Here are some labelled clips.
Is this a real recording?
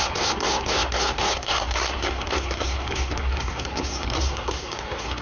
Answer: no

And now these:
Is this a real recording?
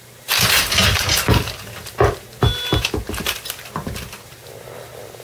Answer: yes